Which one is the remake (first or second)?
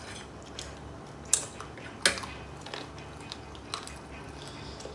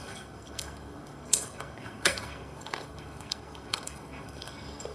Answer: second